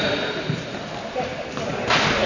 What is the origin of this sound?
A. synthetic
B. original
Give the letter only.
B